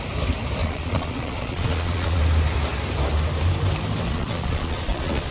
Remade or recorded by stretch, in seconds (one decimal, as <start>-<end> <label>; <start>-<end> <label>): 0.0-0.6 recorded; 0.6-2.2 remade; 2.2-4.1 recorded; 4.1-5.3 remade